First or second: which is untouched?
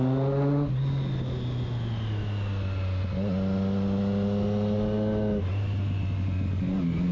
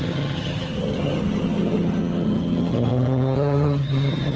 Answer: first